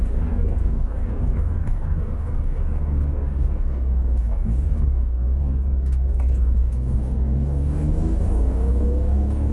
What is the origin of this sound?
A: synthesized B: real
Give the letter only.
A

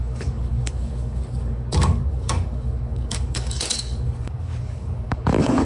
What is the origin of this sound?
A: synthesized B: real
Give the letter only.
A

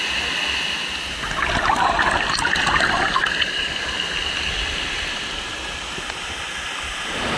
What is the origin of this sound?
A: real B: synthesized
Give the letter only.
A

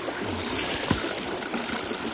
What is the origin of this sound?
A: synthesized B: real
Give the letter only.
B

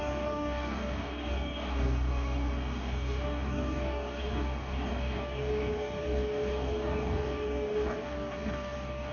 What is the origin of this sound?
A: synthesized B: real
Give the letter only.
A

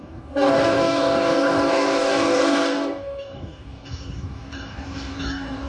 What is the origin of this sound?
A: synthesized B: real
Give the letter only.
A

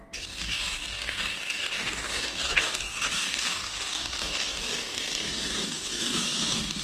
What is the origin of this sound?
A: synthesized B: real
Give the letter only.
A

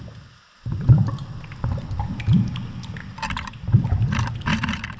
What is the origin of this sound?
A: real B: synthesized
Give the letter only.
A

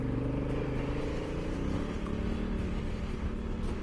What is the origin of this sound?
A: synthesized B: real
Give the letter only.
B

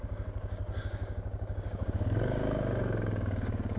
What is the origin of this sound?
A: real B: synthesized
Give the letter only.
B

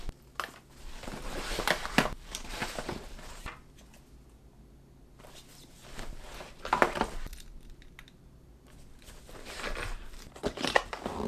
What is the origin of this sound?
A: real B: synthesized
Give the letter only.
A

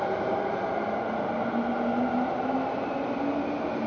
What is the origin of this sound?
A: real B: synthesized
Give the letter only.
A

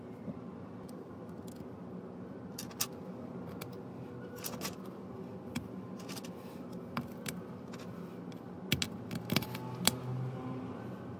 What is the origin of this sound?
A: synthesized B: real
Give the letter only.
B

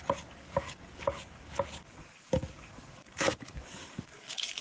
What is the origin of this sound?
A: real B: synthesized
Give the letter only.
B